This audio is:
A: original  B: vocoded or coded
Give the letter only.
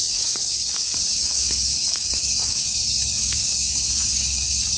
B